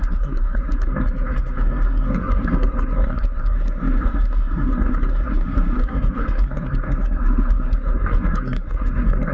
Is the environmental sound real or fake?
fake